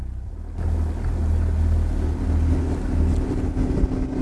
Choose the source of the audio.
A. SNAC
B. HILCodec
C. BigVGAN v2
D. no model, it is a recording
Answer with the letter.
D